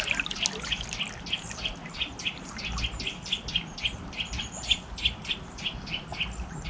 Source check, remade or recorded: recorded